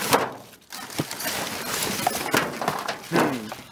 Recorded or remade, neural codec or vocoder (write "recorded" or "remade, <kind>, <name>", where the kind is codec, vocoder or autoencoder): recorded